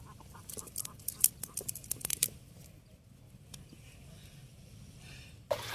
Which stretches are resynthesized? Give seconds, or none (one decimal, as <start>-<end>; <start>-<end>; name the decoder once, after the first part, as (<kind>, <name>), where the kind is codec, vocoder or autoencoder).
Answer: none